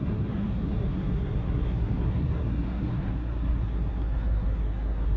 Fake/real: fake